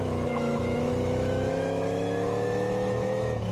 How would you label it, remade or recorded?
remade